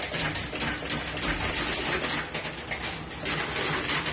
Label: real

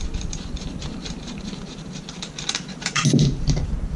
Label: fake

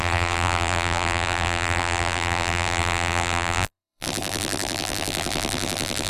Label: fake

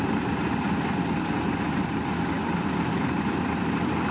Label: real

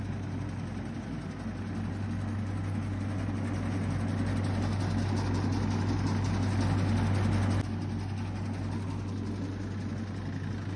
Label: real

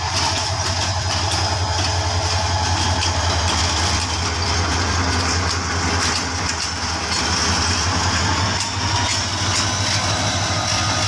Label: real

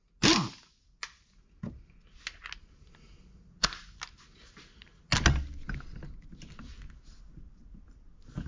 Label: real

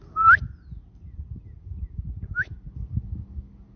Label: real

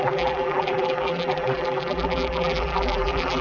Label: fake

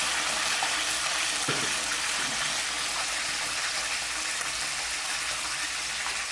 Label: real